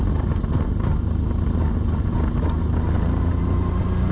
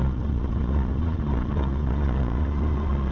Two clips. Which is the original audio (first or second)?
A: first